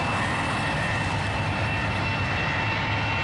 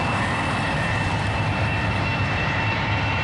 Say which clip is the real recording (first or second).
first